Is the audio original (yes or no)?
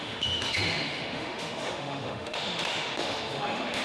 no